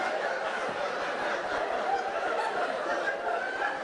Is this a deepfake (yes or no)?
no